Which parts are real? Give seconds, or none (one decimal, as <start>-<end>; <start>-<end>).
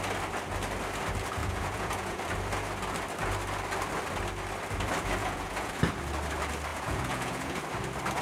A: 0.0-1.4; 2.2-5.2; 5.8-6.7; 7.6-8.2